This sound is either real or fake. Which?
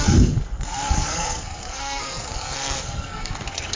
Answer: fake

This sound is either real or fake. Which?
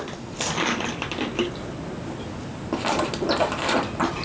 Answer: real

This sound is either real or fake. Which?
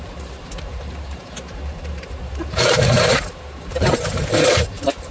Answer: fake